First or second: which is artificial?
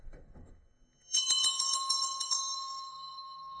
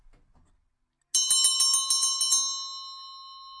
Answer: first